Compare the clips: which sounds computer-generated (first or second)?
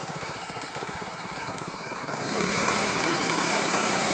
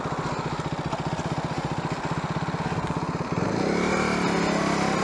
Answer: first